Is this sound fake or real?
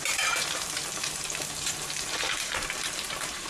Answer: fake